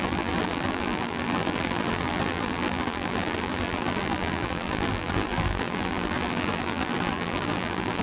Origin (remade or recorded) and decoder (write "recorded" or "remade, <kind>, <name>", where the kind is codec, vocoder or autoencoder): remade, vocoder, BigVGAN v2